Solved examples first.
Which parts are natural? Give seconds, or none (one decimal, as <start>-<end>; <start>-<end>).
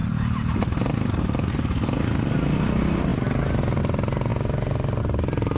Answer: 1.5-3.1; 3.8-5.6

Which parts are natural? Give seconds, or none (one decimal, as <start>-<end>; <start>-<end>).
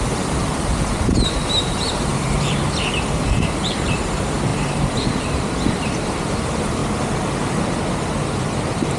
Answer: 6.8-8.6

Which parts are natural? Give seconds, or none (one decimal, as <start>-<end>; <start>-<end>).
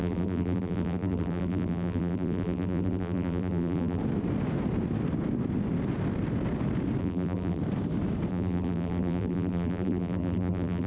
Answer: 4.0-7.0; 7.6-8.3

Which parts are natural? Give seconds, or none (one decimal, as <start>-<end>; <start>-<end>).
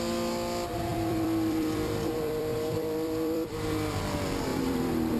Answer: 0.0-0.9; 4.0-4.5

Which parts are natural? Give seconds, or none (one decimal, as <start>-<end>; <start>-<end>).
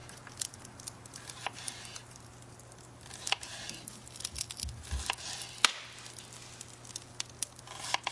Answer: 3.5-8.1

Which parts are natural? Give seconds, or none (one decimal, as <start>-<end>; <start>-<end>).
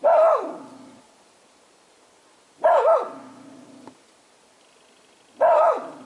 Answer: 0.0-6.0